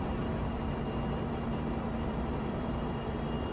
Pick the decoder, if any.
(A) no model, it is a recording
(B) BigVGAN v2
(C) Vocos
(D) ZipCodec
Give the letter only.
B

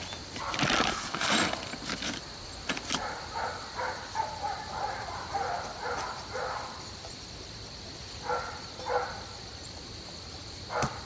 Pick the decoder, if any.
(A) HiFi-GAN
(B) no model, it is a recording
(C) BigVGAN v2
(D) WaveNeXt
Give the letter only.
B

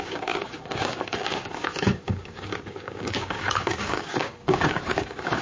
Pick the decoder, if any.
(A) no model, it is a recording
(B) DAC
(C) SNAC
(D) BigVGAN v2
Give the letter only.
B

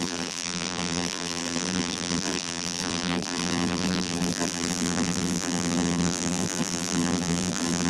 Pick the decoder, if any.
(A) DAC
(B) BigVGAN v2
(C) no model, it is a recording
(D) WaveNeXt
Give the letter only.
B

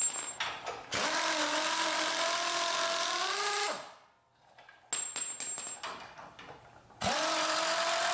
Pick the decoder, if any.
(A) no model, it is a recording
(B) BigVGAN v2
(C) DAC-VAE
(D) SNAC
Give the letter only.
A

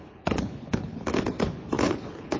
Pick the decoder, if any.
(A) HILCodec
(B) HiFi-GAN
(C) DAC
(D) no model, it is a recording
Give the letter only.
A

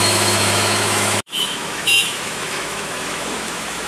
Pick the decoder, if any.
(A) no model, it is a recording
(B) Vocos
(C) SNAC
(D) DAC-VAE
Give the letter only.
D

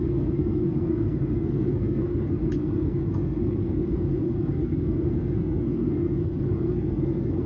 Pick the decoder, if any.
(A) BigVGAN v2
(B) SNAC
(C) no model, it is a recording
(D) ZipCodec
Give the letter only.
B